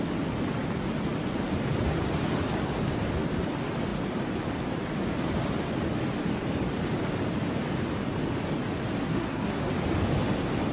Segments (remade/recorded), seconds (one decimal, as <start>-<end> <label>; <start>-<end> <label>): 0.0-9.0 recorded; 9.0-9.7 remade; 9.7-10.7 recorded